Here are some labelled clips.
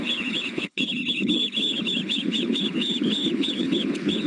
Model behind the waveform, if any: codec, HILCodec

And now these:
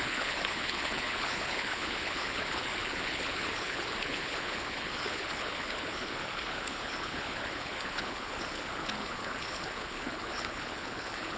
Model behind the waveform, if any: codec, HILCodec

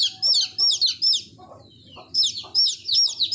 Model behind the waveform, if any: none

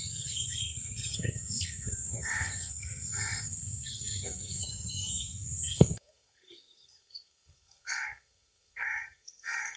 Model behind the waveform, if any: codec, SNAC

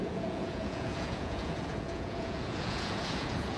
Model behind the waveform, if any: vocoder, Vocos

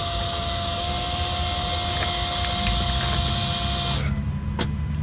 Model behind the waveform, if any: none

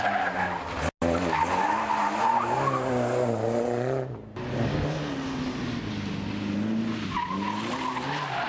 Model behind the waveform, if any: none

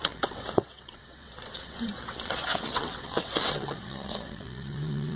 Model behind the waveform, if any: vocoder, WaveNeXt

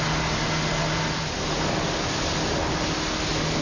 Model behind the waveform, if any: none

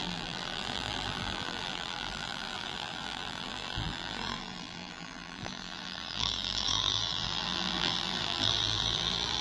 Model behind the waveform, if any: vocoder, BigVGAN v2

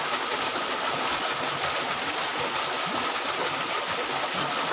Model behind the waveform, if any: none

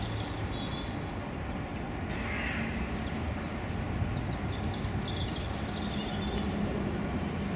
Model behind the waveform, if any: none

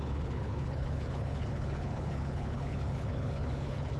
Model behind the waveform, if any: codec, HILCodec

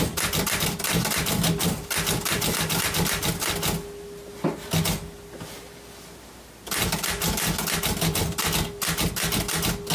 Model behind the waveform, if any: none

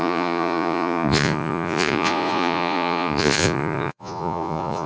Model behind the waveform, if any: vocoder, Vocos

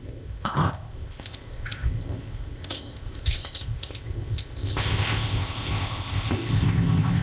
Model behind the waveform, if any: codec, ZipCodec